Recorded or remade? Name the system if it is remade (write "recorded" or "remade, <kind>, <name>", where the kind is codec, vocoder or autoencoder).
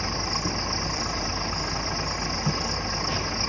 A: recorded